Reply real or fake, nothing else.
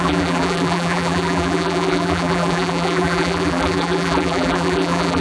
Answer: fake